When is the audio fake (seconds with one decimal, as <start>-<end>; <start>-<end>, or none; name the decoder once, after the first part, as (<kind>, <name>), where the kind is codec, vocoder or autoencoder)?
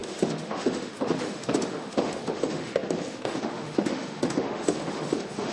0.0-5.5 (autoencoder, DAC-VAE)